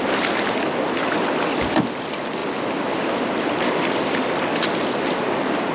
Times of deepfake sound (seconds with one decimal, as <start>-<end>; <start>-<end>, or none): none